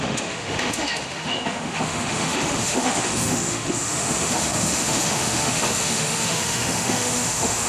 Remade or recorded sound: remade